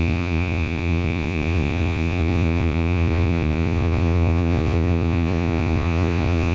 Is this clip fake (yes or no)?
yes